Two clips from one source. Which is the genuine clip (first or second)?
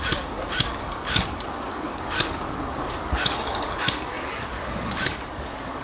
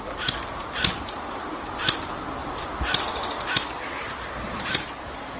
second